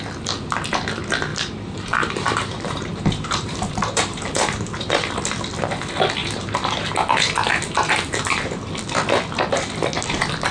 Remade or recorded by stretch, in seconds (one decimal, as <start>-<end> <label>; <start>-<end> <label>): 0.0-1.3 recorded; 1.3-5.1 remade; 5.1-6.2 recorded; 6.2-8.7 remade; 8.7-10.5 recorded